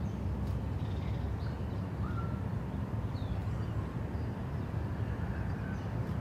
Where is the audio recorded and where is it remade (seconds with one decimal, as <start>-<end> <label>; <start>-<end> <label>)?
0.0-6.2 recorded